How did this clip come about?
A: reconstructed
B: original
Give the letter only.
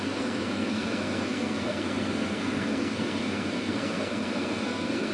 A